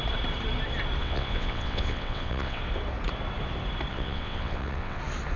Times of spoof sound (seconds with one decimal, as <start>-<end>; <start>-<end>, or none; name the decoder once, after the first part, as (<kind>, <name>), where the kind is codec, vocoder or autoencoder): 1.0-2.6 (vocoder, WaveNeXt); 3.9-5.0